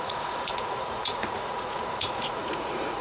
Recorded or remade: remade